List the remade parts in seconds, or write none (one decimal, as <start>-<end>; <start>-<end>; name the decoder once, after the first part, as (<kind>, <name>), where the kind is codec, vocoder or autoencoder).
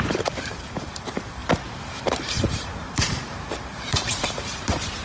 0.0-5.0 (vocoder, BigVGAN v2)